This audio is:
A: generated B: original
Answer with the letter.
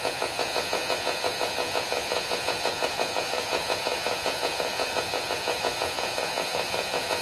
A